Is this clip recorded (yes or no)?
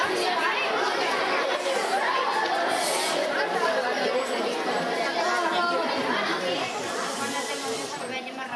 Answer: yes